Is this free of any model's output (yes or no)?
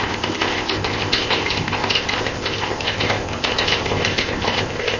no